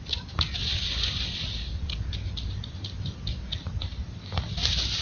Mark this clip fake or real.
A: real